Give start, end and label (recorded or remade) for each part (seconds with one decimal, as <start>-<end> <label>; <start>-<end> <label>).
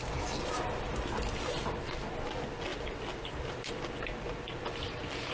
0.0-5.3 recorded